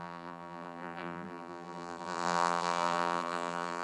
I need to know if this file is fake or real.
fake